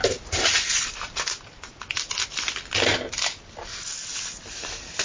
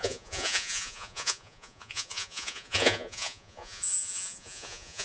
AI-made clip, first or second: second